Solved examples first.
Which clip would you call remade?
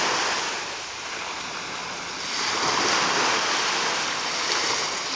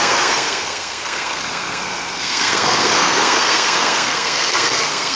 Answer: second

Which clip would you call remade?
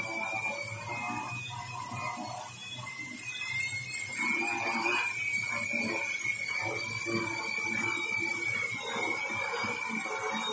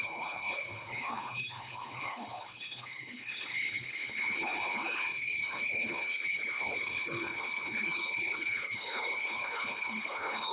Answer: second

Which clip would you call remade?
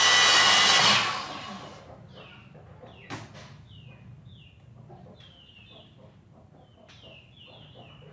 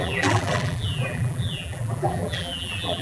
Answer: second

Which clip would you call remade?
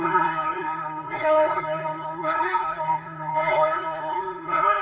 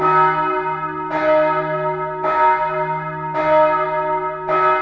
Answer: first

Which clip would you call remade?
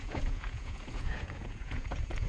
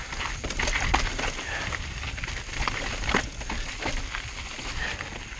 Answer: first